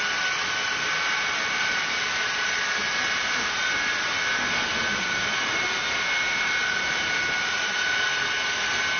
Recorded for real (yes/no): yes